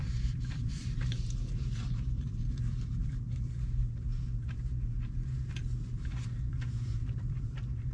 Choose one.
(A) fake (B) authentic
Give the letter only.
A